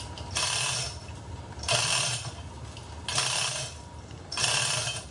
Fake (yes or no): no